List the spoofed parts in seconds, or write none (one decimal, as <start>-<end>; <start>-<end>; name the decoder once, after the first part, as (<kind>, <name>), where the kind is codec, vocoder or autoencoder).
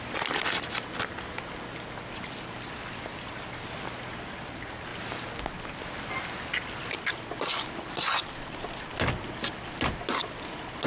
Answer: none